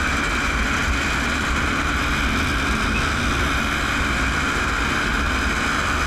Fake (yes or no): no